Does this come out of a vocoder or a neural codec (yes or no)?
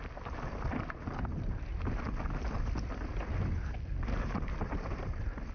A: no